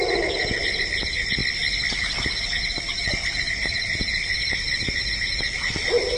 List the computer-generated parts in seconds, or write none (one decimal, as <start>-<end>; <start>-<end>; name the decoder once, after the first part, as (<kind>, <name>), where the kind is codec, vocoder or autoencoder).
0.0-1.4 (vocoder, BigVGAN v2); 2.0-6.2